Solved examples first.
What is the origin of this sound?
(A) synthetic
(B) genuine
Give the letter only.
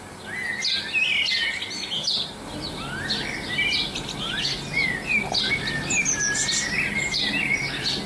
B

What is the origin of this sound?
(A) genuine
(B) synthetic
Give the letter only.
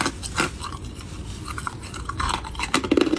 A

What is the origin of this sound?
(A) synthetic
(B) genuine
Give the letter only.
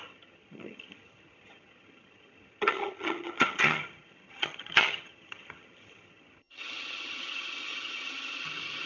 A